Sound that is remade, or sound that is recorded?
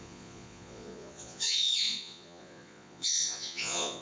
remade